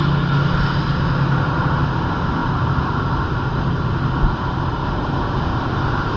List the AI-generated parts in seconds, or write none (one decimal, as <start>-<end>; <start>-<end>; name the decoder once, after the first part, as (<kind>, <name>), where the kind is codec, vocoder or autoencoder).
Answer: 2.4-3.0 (vocoder, BigVGAN v2); 4.8-6.2